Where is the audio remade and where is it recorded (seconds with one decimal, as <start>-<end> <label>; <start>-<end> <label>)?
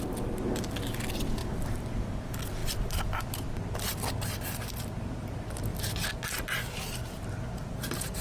0.0-8.2 recorded